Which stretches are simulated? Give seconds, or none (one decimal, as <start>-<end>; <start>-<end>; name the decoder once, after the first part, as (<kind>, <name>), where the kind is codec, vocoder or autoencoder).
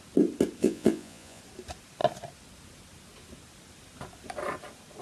0.6-1.4 (vocoder, Vocos)